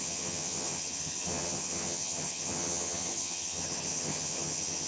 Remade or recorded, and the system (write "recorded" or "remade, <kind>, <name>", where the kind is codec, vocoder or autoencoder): remade, vocoder, HiFi-GAN